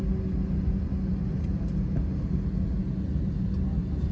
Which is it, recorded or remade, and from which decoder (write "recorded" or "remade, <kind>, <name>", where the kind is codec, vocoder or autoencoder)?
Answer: recorded